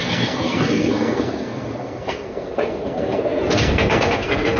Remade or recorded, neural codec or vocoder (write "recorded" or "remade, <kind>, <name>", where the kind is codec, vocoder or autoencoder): remade, codec, SNAC